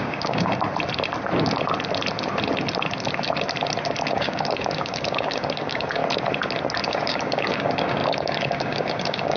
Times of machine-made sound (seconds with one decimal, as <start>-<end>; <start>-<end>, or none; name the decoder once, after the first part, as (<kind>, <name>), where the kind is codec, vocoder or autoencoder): 0.0-0.5 (codec, DAC); 4.1-6.0; 6.9-9.4